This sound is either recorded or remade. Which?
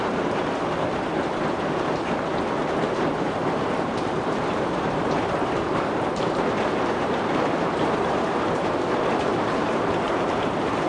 remade